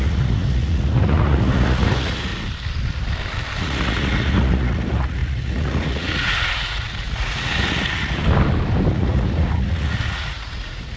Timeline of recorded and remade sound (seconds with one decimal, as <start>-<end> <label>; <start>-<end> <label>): 0.0-2.3 remade; 2.3-3.6 recorded; 3.6-8.2 remade; 8.2-8.9 recorded; 8.9-11.0 remade